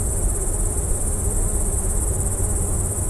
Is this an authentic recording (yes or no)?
yes